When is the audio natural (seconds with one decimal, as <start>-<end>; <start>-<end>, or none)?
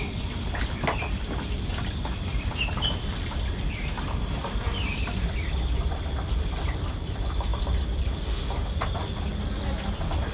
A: none